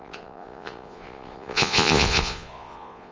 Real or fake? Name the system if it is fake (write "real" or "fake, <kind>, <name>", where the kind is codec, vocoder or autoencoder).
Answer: fake, vocoder, Vocos